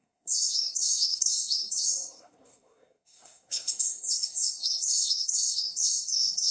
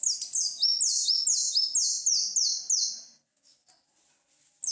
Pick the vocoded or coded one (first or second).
first